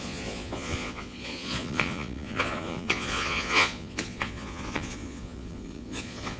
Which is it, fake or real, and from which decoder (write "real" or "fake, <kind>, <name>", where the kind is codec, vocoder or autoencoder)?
fake, vocoder, Vocos